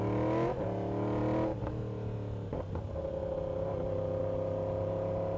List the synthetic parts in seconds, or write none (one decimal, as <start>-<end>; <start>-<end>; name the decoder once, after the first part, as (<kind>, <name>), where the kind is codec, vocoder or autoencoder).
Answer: none